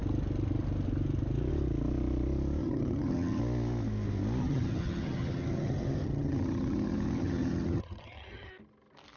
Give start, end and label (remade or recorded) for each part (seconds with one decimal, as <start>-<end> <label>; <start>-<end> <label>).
0.0-2.6 recorded; 2.6-3.4 remade; 3.4-4.4 recorded; 4.4-8.5 remade; 8.5-9.2 recorded